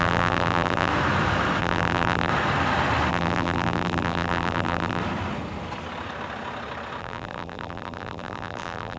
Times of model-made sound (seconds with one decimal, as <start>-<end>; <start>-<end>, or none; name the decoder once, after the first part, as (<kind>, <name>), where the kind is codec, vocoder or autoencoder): 0.0-0.9 (vocoder, BigVGAN v2); 1.6-2.3; 3.1-5.0; 7.0-9.0